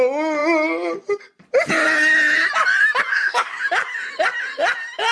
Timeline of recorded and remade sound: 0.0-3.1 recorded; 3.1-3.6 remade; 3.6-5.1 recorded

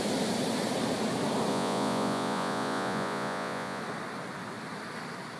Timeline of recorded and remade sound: 0.0-1.5 recorded; 1.5-3.8 remade; 3.8-5.4 recorded

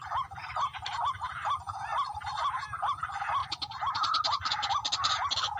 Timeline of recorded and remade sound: 0.0-0.4 recorded; 0.4-1.3 remade; 1.3-5.6 recorded

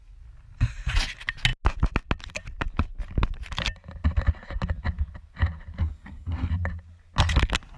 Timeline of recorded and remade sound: 0.0-5.8 recorded; 5.8-6.5 remade; 6.5-7.8 recorded

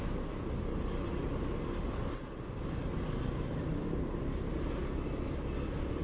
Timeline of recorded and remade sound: 0.0-6.0 recorded

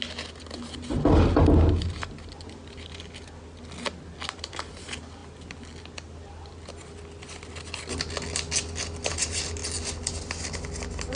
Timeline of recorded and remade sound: 0.0-11.2 recorded

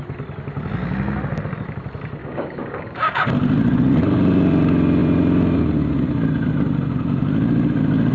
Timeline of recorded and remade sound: 0.0-2.2 recorded; 2.2-3.3 remade; 3.3-8.1 recorded

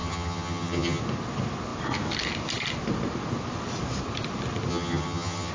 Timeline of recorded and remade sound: 0.0-1.0 remade; 1.0-4.7 recorded; 4.7-5.5 remade